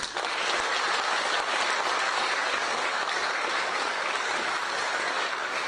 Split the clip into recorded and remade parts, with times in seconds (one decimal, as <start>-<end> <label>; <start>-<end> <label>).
0.0-2.0 recorded; 2.0-5.7 remade